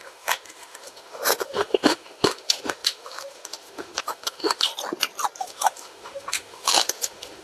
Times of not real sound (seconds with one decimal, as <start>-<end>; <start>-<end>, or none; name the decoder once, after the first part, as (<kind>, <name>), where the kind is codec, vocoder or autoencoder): 0.0-4.7 (autoencoder, DAC-VAE); 5.4-7.4